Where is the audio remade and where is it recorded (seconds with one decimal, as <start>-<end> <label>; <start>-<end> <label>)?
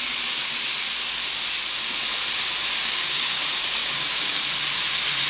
0.0-2.8 recorded; 2.8-3.4 remade; 3.4-3.8 recorded; 3.8-4.4 remade; 4.4-5.3 recorded